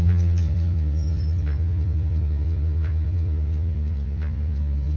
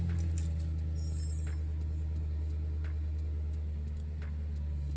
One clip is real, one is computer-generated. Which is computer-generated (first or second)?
first